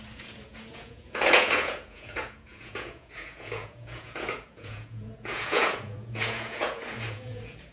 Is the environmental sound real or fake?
fake